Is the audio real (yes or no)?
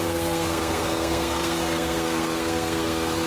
no